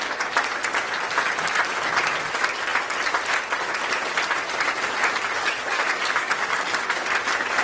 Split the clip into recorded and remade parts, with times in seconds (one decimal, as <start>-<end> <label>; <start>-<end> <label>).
0.0-5.4 recorded; 5.4-6.8 remade; 6.8-7.6 recorded